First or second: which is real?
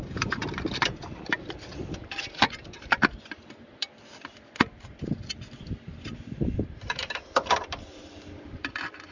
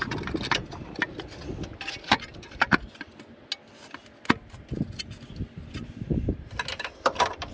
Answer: second